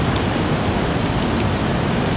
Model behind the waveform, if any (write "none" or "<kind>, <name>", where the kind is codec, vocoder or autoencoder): none